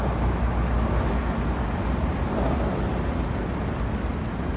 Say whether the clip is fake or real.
real